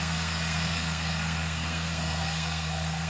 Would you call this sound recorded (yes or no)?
no